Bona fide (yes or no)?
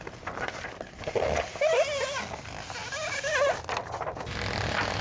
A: yes